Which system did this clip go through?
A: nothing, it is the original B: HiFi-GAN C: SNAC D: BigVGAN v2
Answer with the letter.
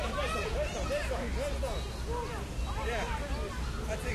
A